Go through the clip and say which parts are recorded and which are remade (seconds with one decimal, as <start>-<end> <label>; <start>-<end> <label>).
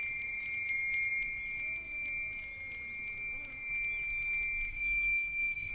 0.0-4.7 recorded; 4.7-5.7 remade